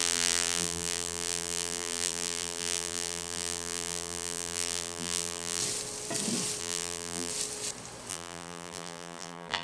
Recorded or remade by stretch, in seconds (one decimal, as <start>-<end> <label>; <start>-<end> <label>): 0.0-5.6 remade; 5.6-6.6 recorded; 6.6-7.3 remade; 7.3-8.1 recorded; 8.1-9.6 remade